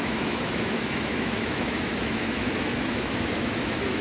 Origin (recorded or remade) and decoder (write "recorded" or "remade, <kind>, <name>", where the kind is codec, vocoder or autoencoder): remade, autoencoder, DAC-VAE